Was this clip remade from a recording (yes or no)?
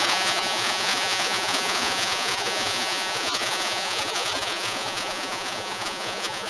yes